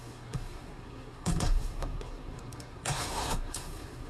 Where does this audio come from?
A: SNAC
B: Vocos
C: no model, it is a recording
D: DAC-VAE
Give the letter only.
A